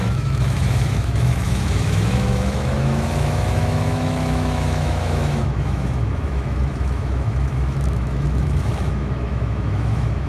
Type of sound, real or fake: fake